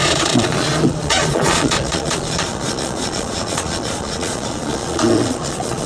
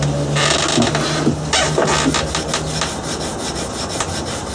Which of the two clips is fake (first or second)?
first